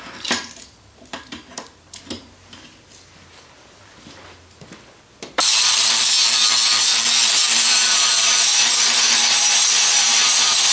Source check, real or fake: fake